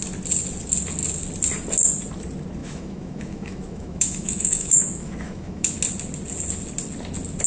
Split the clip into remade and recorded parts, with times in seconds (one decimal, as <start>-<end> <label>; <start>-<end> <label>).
0.0-2.6 recorded; 2.6-5.8 remade; 5.8-7.5 recorded